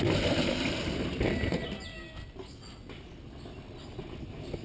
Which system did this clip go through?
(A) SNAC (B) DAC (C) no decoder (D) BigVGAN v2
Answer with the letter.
C